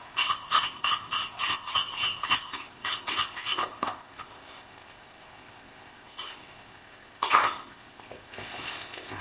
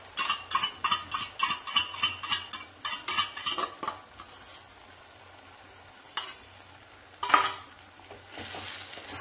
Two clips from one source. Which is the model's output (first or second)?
first